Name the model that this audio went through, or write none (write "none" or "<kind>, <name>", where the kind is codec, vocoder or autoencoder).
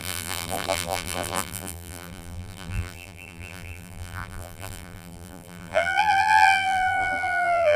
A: vocoder, BigVGAN v2